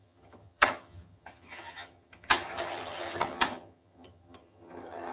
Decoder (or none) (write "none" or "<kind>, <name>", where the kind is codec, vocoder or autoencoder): vocoder, HiFi-GAN